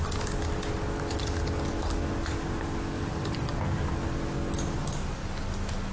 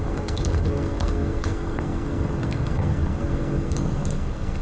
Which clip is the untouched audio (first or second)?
first